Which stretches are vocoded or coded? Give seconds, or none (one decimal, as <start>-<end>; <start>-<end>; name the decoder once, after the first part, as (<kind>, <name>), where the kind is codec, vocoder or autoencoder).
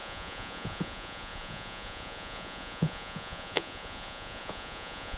0.0-5.2 (vocoder, Vocos)